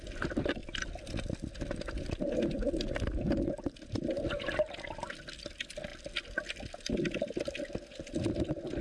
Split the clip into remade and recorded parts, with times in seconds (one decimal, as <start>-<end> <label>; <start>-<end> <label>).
0.0-8.8 recorded